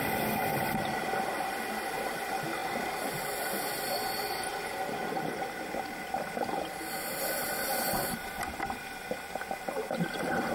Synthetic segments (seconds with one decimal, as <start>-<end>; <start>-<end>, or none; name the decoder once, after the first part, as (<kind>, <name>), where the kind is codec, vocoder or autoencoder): none